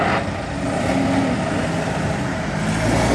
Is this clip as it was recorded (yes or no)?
yes